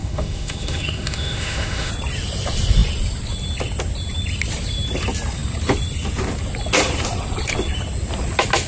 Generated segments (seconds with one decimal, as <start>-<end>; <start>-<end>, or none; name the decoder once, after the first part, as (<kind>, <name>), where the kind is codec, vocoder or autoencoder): 0.0-1.9 (autoencoder, DAC-VAE)